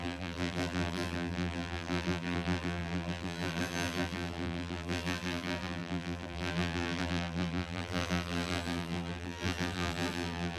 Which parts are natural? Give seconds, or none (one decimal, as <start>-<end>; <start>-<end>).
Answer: none